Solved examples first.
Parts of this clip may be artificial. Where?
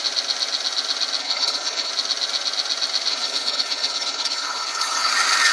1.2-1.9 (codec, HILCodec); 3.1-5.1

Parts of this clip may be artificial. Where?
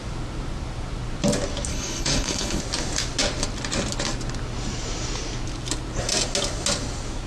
1.7-2.6 (codec, HILCodec)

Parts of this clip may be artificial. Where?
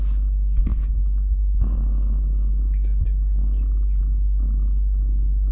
none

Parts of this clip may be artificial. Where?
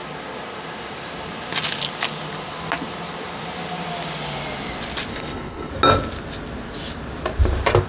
5.1-5.7 (codec, HILCodec)